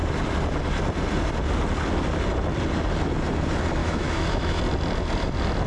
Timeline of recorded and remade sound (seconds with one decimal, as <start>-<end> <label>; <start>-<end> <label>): 0.0-3.8 recorded; 3.8-4.6 remade; 4.6-5.7 recorded